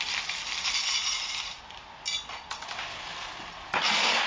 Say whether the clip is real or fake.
real